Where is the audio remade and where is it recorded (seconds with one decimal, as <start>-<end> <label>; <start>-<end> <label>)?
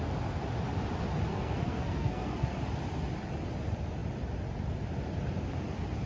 0.0-1.3 recorded; 1.3-2.6 remade; 2.6-6.1 recorded